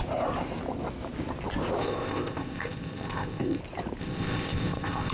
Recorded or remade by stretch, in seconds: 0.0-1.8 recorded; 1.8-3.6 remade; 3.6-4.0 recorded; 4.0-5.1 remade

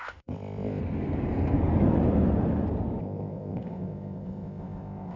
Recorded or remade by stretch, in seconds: 0.0-0.8 remade; 0.8-3.0 recorded; 3.0-5.2 remade

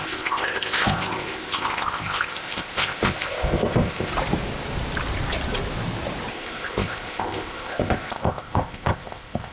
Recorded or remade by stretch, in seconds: 0.0-4.1 remade; 4.1-6.3 recorded; 6.3-9.5 remade